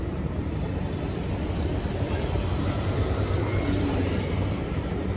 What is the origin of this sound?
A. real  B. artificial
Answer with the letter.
B